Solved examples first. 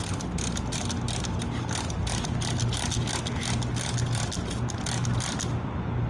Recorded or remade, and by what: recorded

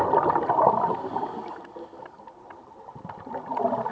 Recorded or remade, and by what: recorded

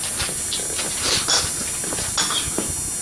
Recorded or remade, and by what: recorded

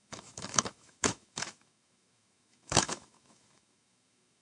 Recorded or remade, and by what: remade, autoencoder, DAC-VAE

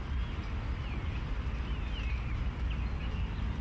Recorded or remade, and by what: recorded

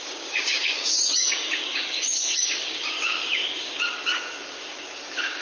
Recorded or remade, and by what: remade, codec, DAC